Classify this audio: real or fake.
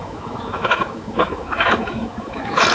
fake